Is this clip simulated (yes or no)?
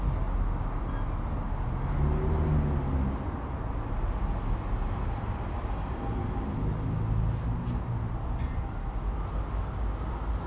no